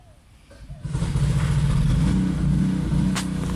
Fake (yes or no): no